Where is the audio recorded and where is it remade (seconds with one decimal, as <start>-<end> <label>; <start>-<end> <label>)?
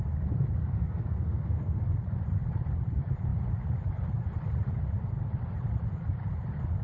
0.0-0.6 recorded; 0.6-1.8 remade; 1.8-6.8 recorded